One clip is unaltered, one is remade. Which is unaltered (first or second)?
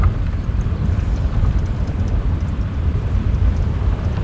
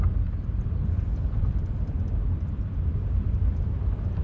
second